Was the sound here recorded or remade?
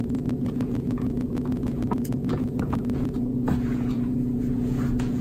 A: remade